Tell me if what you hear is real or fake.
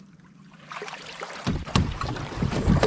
fake